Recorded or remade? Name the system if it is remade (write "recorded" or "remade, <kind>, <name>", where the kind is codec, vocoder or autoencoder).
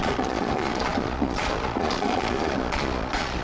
remade, vocoder, Vocos